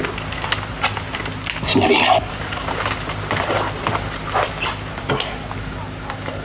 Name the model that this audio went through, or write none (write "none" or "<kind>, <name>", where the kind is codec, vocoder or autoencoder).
none